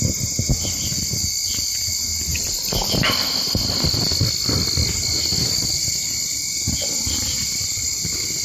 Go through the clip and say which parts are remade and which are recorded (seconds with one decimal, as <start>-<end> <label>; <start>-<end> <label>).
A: 0.0-8.4 recorded

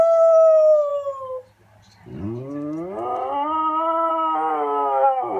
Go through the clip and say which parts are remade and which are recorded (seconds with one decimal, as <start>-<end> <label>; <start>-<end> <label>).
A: 0.0-0.9 remade; 0.9-4.1 recorded; 4.1-5.4 remade